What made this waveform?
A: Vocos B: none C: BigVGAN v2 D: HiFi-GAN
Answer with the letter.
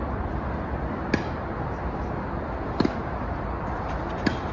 B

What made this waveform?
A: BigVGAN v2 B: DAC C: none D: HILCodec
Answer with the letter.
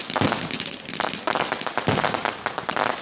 C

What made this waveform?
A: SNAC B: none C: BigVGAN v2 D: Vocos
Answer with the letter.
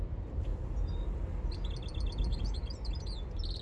B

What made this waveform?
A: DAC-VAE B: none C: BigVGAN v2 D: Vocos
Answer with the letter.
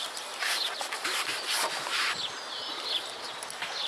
B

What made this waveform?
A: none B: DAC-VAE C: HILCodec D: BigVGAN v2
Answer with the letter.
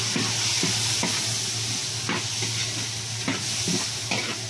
A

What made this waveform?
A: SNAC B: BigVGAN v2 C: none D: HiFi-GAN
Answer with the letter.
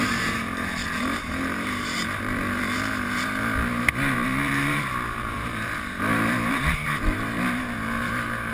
B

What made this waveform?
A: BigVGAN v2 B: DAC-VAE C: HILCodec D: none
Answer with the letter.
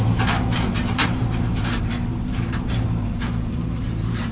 A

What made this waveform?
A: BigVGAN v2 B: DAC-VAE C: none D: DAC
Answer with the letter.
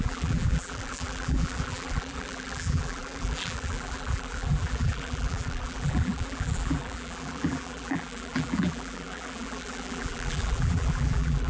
A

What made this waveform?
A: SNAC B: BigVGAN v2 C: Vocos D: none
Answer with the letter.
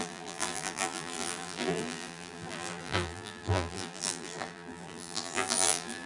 B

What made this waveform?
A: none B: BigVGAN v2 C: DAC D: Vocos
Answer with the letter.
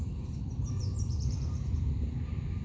B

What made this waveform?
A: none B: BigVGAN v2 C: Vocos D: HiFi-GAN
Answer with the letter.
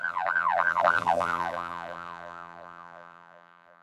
B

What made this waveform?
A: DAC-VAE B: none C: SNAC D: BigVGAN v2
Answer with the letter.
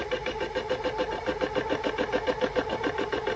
B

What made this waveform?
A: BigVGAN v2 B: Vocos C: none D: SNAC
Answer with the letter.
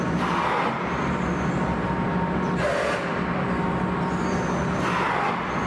C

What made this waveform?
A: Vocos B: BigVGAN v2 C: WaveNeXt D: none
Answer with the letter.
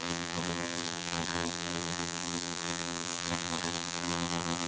B